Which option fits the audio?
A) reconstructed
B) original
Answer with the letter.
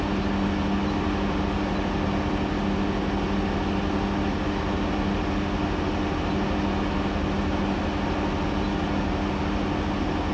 B